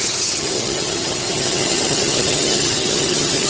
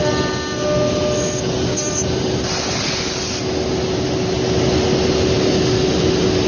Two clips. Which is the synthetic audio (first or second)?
first